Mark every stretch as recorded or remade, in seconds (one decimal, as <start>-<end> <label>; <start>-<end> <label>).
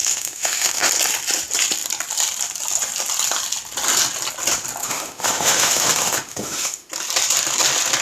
0.0-0.9 remade; 0.9-4.8 recorded; 4.8-6.9 remade; 6.9-8.0 recorded